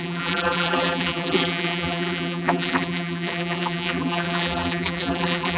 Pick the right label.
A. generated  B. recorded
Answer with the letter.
A